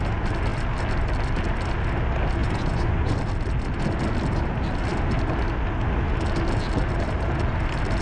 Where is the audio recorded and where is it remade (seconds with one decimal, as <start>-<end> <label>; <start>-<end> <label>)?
0.0-2.4 recorded; 2.4-3.1 remade; 3.1-8.0 recorded